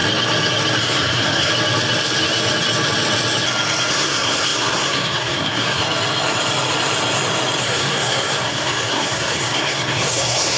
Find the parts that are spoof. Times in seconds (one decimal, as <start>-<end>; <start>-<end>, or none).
0.8-1.5; 3.9-5.8; 7.6-10.6